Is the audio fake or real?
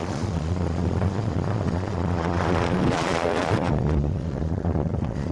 fake